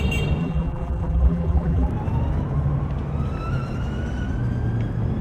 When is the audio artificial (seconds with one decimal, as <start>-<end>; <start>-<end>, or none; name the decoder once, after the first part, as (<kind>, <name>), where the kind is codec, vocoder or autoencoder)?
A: 0.4-1.9 (vocoder, BigVGAN v2)